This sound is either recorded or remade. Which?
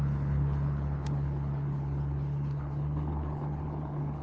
remade